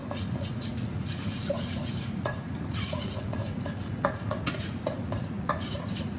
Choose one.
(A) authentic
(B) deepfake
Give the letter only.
B